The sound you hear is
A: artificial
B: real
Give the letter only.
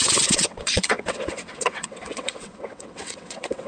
A